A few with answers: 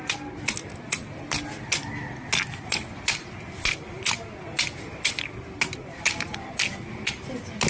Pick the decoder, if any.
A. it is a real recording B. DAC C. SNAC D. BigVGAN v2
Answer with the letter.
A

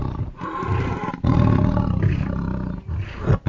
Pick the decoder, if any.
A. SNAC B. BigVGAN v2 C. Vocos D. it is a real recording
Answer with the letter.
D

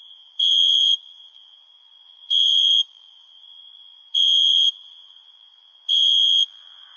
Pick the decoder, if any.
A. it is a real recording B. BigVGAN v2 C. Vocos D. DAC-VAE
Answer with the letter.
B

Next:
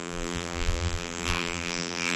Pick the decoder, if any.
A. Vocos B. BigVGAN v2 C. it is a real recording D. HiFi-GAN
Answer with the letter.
B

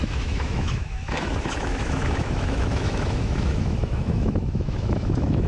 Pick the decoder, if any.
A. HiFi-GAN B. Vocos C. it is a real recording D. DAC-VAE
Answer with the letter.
D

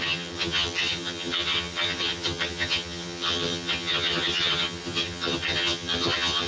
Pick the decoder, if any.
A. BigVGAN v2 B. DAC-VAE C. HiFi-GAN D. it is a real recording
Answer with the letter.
C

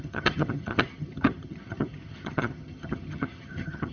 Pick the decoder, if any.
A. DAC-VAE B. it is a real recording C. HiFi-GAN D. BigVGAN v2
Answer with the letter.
C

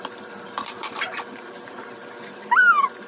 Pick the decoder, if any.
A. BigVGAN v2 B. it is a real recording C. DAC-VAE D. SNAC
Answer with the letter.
A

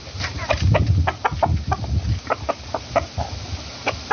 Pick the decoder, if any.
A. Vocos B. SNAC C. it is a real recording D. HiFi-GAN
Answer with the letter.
C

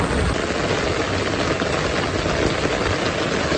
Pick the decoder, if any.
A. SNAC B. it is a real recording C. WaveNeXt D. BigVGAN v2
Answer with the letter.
B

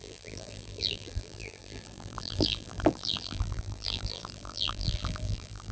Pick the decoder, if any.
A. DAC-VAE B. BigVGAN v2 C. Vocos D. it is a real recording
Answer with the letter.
B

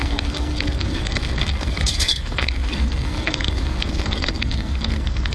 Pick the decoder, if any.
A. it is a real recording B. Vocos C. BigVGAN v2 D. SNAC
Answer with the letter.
D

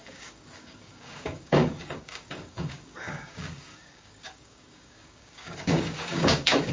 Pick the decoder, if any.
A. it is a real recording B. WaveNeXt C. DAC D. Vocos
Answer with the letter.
C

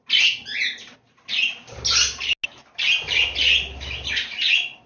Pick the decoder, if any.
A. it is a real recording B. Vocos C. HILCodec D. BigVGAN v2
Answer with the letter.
A